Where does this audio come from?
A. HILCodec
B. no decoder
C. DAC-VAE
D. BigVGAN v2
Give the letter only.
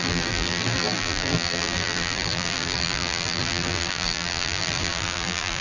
D